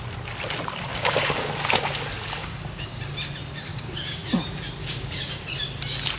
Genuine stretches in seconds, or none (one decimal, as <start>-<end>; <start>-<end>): 0.0-0.9; 1.5-2.4; 3.0-3.7; 4.3-4.8; 5.4-6.2